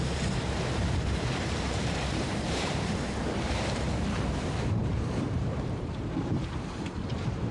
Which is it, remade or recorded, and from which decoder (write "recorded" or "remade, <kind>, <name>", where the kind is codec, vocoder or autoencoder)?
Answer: remade, vocoder, BigVGAN v2